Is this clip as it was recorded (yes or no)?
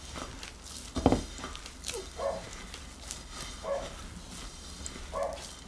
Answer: yes